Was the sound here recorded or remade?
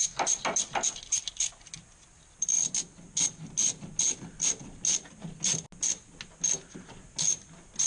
recorded